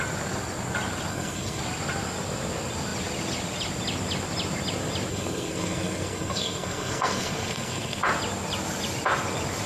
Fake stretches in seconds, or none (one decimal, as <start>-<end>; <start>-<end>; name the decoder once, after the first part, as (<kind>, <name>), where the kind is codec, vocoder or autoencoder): 1.1-1.6 (codec, SNAC); 5.1-8.0